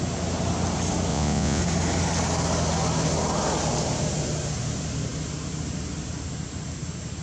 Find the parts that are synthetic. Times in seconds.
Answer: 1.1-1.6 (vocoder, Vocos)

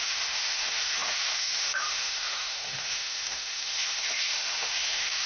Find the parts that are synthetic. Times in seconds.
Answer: 0.0-5.3 (autoencoder, DAC-VAE)

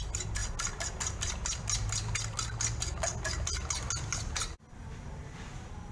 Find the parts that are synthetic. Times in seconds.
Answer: none

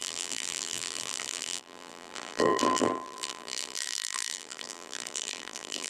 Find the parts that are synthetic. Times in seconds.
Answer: 0.0-5.9 (vocoder, BigVGAN v2)